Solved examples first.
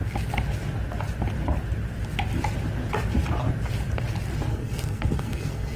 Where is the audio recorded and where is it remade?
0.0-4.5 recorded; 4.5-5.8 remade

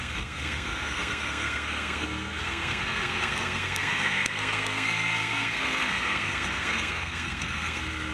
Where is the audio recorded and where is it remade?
0.0-8.1 remade

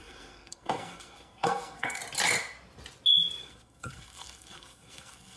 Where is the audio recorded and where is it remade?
0.0-2.0 remade; 2.0-3.4 recorded; 3.4-5.4 remade

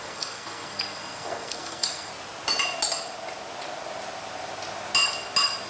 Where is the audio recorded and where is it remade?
0.0-2.1 remade; 2.1-5.7 recorded

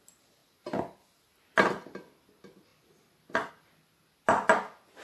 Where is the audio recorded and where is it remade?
0.0-5.0 recorded